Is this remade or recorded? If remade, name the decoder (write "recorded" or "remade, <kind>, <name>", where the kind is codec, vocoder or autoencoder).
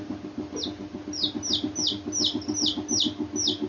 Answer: recorded